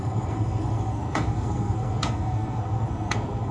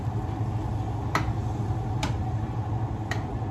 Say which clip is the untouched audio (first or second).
second